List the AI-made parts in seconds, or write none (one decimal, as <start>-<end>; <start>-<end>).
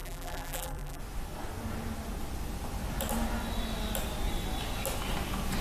0.0-1.0